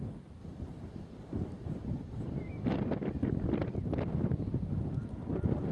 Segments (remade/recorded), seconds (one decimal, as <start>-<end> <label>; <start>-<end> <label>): 0.0-0.4 recorded; 0.4-2.4 remade; 2.4-3.6 recorded; 3.6-4.6 remade; 4.6-5.0 recorded; 5.0-5.7 remade

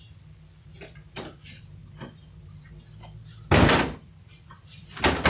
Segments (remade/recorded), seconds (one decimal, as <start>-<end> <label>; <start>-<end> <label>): 0.0-5.3 recorded

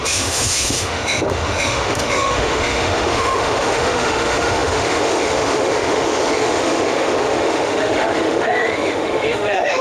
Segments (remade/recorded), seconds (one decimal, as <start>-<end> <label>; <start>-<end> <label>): 0.0-9.8 remade

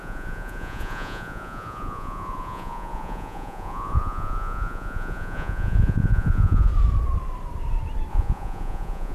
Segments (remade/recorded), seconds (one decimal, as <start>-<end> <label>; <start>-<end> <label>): 0.0-6.7 remade; 6.7-8.1 recorded; 8.1-9.1 remade

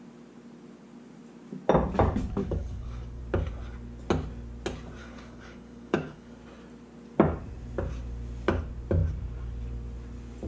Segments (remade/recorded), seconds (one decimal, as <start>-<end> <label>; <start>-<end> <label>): 0.0-2.4 recorded; 2.4-3.2 remade; 3.2-5.0 recorded; 5.0-6.4 remade; 6.4-10.5 recorded

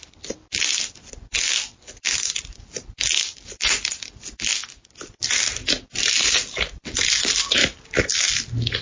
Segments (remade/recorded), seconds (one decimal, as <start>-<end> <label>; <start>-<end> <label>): 0.0-8.8 recorded

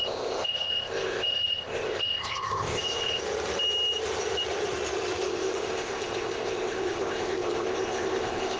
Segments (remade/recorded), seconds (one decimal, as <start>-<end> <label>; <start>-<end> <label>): 0.0-3.2 remade; 3.2-5.3 recorded; 5.3-8.6 remade